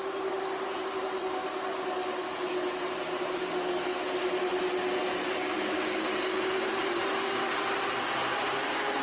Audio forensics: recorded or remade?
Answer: recorded